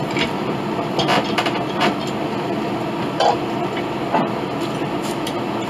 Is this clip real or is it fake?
real